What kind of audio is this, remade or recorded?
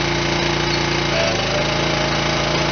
recorded